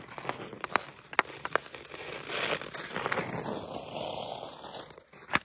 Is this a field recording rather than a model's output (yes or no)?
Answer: yes